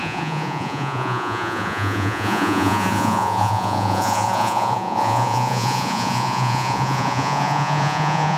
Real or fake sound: fake